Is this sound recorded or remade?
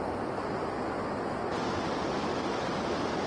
recorded